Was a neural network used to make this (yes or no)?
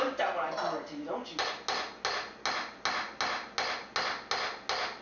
no